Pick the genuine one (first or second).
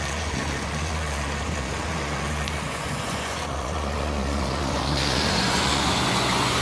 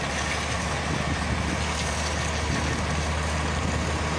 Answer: second